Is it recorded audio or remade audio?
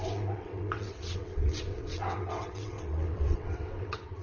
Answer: remade